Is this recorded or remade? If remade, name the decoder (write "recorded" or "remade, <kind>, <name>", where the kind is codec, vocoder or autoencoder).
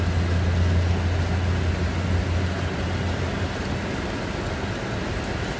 recorded